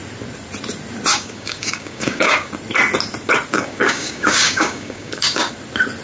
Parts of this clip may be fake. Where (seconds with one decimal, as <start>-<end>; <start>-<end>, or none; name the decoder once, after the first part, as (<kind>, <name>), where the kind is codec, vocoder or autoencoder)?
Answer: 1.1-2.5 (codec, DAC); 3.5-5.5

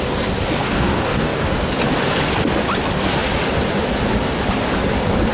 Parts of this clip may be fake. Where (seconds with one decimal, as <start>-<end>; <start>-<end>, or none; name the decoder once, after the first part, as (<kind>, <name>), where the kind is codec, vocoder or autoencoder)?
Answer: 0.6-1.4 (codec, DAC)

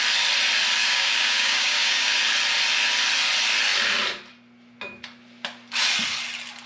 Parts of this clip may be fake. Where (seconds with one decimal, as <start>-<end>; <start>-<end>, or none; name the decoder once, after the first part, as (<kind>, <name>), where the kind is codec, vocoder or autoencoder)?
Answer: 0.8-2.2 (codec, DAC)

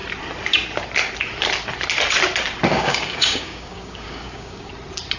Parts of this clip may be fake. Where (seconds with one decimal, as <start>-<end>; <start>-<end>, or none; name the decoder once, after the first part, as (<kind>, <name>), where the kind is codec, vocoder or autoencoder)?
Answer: 2.7-4.7 (codec, DAC)

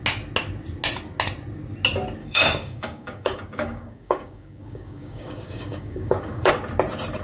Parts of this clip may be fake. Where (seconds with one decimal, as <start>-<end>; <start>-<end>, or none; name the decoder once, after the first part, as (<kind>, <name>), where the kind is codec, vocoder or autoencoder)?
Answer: 2.2-6.5 (codec, DAC)

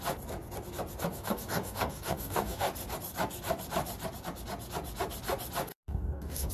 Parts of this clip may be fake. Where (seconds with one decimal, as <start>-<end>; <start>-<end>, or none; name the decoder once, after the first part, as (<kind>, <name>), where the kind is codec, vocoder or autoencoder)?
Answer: 1.1-2.7 (codec, DAC); 5.7-6.5

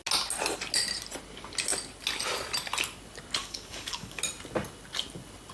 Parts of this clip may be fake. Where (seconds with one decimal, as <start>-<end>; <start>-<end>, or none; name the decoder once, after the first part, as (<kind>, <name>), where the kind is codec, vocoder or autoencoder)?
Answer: 3.4-4.2 (codec, DAC)